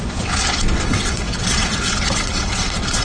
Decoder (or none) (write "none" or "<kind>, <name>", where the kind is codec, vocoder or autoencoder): vocoder, WaveNeXt